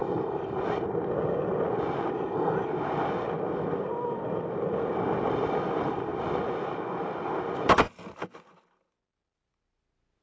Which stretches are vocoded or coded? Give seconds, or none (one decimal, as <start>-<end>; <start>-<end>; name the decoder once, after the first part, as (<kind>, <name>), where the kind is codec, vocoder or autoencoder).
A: none